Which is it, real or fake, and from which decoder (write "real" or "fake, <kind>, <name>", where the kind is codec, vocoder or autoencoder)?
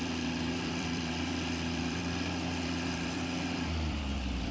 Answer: fake, vocoder, BigVGAN v2